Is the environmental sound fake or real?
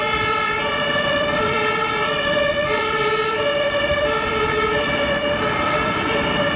fake